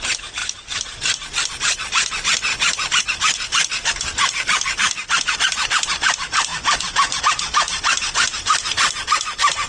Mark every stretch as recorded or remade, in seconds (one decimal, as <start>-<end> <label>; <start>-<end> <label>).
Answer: 0.0-0.4 recorded; 0.4-1.5 remade; 1.5-2.5 recorded; 2.5-3.0 remade; 3.0-6.5 recorded; 6.5-7.2 remade; 7.2-9.7 recorded